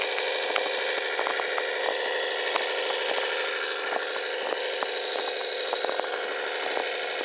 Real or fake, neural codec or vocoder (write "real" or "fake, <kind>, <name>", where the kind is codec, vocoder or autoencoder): real